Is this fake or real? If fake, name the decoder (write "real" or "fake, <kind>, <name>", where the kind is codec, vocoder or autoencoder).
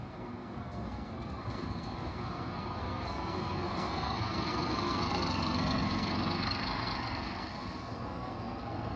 fake, codec, SNAC